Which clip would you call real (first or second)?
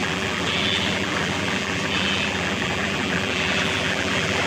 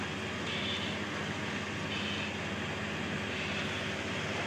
second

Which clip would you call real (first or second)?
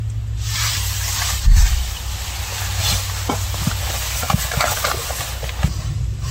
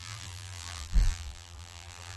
first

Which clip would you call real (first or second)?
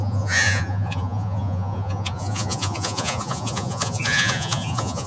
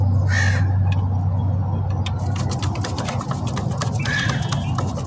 second